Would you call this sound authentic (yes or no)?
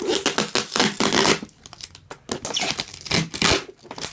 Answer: yes